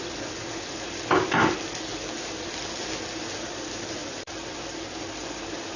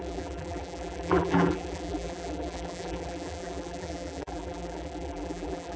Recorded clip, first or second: first